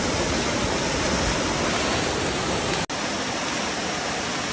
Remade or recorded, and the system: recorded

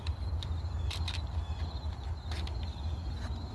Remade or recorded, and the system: recorded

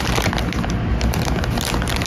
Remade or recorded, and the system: recorded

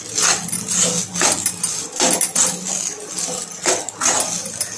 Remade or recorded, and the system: recorded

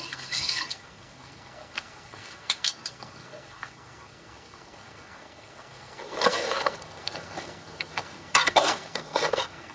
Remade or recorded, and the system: remade, codec, SNAC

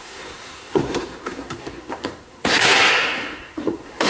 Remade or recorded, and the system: remade, codec, SNAC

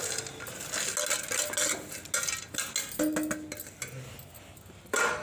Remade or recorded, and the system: recorded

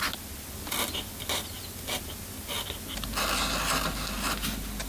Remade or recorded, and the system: recorded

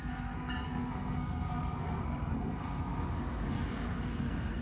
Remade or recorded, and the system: remade, codec, SNAC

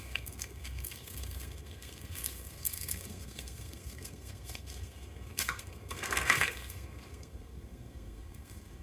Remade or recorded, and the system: remade, codec, SNAC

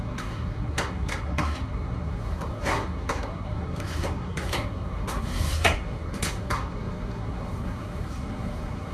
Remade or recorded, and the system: remade, codec, SNAC